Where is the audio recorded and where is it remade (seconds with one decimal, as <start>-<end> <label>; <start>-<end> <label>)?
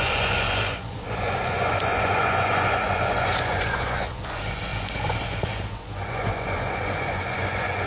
0.0-7.9 remade